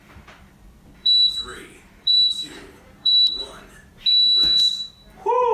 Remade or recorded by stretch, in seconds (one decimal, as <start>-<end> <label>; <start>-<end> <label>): 0.0-3.9 remade; 3.9-5.5 recorded